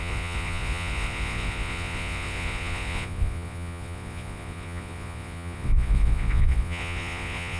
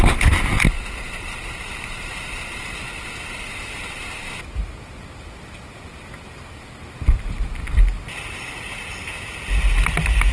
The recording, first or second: second